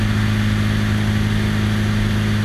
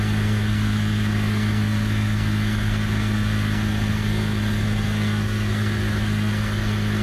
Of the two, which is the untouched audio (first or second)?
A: first